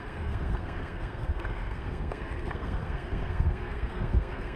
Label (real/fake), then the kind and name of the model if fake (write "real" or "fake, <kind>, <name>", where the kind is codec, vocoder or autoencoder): fake, codec, SNAC